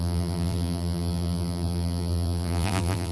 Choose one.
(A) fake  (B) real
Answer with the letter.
A